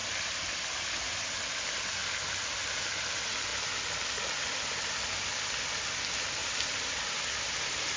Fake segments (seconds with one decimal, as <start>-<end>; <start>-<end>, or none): 0.0-1.3; 6.4-7.0